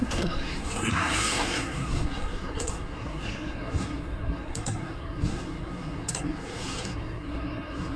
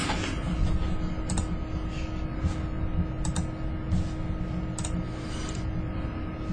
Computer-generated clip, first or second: first